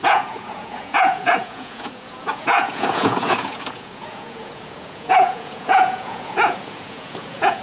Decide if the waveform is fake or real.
fake